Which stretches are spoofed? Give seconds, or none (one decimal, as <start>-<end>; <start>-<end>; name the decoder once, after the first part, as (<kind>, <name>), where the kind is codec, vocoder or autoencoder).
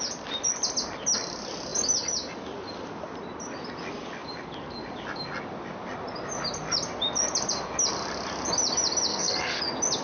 9.1-9.6 (codec, SNAC)